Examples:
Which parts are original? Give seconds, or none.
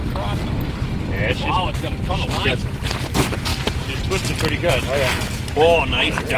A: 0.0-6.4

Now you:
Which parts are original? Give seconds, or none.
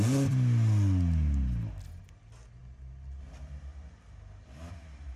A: 0.0-5.2